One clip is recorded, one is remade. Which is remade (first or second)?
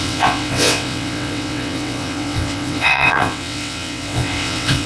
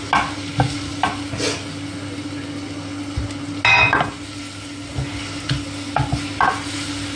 first